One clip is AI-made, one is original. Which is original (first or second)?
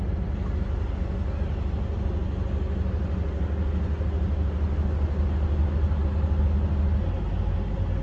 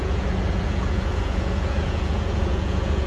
first